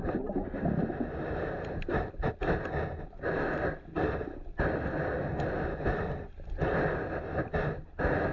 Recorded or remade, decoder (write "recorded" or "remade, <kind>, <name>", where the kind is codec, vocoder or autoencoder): recorded